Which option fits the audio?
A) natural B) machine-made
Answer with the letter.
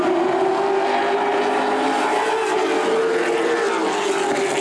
A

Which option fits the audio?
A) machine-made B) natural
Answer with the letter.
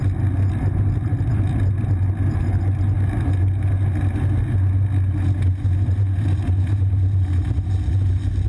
B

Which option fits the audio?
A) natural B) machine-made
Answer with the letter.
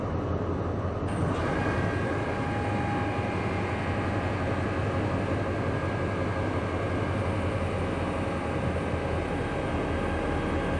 A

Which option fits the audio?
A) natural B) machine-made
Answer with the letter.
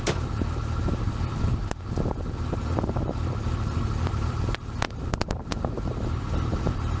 A